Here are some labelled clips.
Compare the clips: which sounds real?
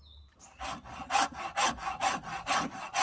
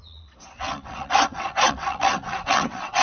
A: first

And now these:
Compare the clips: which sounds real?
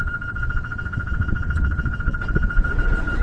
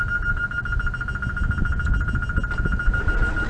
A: second